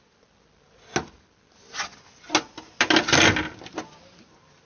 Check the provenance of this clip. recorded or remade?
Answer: recorded